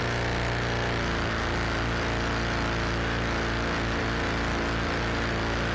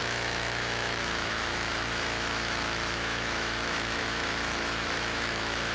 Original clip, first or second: first